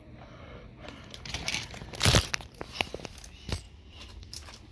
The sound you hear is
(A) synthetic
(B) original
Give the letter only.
A